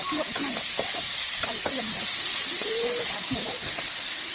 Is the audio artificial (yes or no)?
no